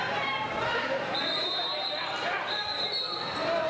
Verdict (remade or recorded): remade